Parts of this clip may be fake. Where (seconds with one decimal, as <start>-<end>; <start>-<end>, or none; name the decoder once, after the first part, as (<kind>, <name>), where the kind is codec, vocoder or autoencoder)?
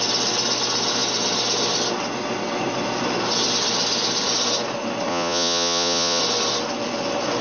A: 5.1-6.2 (vocoder, Vocos)